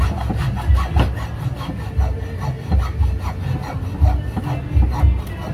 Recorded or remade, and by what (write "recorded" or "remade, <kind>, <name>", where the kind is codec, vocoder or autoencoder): recorded